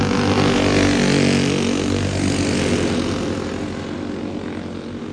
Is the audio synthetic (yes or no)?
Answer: no